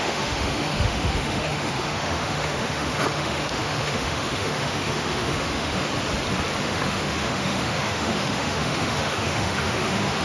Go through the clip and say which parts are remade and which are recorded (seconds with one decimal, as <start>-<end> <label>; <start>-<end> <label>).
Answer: 0.0-5.9 remade; 5.9-6.6 recorded; 6.6-10.2 remade